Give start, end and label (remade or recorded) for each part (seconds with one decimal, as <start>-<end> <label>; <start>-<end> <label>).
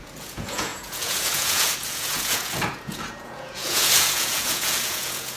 0.0-5.4 remade